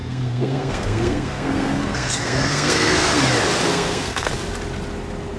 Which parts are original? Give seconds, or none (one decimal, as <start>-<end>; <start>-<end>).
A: 3.2-3.6; 4.3-5.4